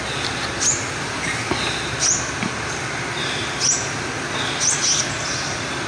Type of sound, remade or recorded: recorded